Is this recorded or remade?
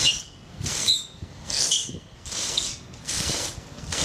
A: remade